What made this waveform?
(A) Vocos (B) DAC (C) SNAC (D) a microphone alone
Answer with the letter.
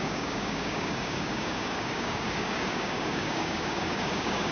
B